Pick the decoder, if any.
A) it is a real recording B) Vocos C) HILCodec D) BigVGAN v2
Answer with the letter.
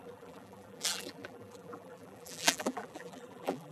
D